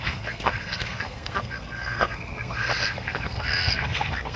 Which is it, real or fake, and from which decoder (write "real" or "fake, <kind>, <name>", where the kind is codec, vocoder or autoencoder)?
fake, codec, SNAC